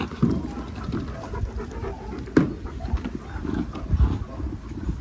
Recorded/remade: recorded